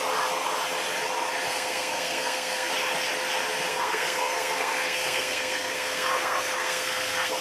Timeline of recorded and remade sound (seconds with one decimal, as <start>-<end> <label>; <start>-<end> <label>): 0.0-1.5 recorded; 1.5-2.7 remade; 2.7-3.7 recorded; 3.7-7.4 remade